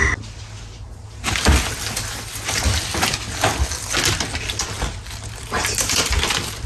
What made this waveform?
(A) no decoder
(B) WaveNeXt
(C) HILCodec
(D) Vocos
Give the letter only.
A